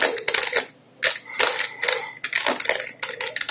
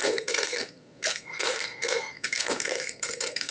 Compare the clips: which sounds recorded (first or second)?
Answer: first